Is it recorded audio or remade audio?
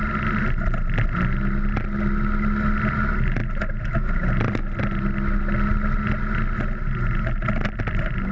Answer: recorded